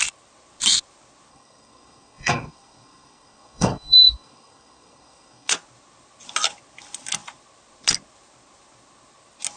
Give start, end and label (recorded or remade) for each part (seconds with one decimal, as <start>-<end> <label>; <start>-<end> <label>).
0.0-1.3 recorded; 1.3-5.5 remade; 5.5-9.6 recorded